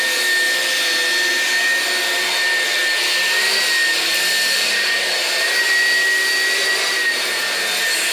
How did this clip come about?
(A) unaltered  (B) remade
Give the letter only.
A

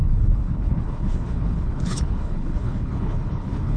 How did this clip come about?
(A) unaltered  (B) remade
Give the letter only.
B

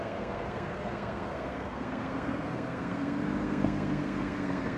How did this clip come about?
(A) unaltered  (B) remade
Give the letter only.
B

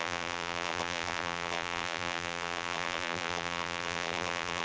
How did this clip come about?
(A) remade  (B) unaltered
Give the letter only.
A